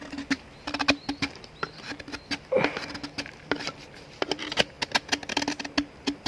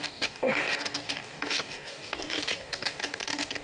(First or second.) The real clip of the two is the first